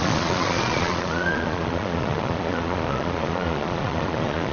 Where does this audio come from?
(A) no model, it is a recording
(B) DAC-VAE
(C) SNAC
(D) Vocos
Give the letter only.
D